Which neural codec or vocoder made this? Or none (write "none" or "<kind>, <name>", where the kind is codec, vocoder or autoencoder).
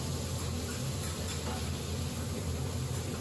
none